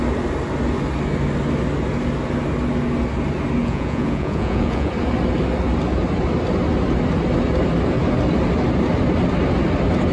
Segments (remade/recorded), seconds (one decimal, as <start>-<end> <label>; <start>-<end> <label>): 0.0-3.6 recorded; 3.6-4.9 remade; 4.9-10.1 recorded